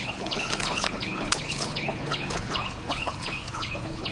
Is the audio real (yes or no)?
no